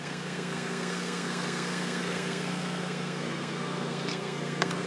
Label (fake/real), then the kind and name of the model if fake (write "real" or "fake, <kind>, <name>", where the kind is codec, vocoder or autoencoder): fake, codec, SNAC